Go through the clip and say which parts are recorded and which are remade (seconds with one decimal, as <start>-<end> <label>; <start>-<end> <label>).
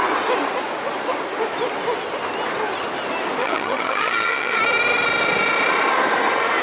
0.0-3.4 recorded; 3.4-4.6 remade; 4.6-6.6 recorded